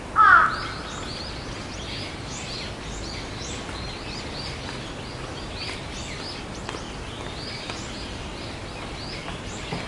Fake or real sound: real